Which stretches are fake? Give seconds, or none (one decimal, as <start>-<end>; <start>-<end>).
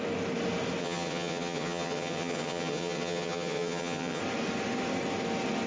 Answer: 0.8-4.2